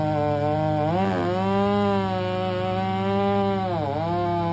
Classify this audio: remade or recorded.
recorded